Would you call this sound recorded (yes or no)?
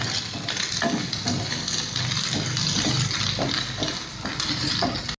yes